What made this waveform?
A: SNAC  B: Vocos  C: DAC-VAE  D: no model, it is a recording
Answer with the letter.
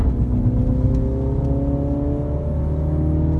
D